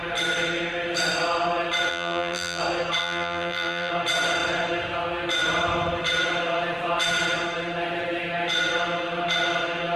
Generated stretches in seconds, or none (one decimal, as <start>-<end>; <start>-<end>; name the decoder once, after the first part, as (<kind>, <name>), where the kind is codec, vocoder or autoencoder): 1.9-2.6 (vocoder, BigVGAN v2); 3.0-3.9